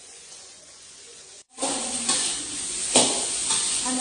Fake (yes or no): yes